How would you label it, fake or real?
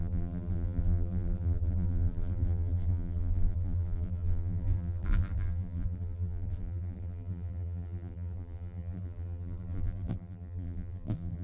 fake